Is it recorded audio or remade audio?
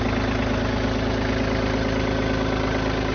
recorded